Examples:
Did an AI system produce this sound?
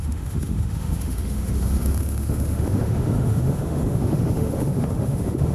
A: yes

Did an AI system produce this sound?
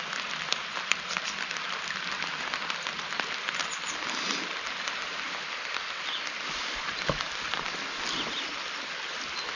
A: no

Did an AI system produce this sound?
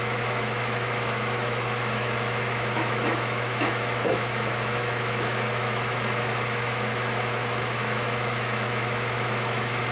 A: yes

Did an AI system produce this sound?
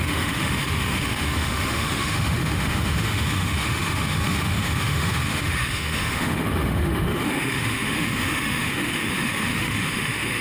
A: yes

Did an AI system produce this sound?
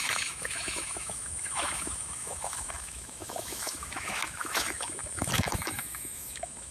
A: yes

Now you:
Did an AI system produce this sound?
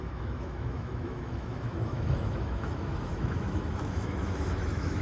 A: yes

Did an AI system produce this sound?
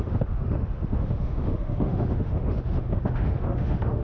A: yes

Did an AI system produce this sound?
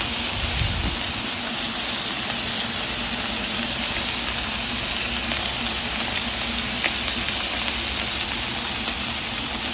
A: no